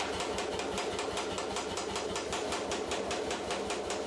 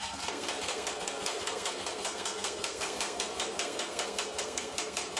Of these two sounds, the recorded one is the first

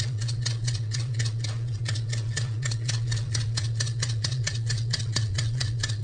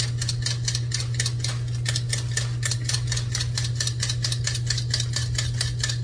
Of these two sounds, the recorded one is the second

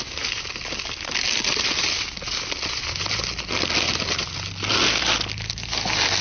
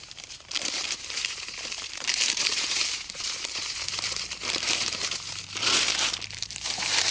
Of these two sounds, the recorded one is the first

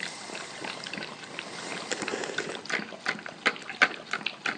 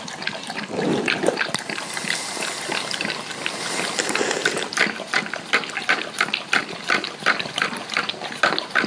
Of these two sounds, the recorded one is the second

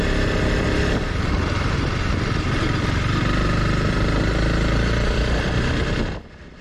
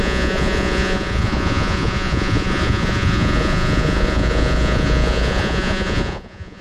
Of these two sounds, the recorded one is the first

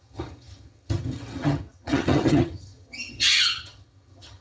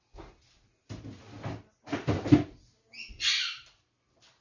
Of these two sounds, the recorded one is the second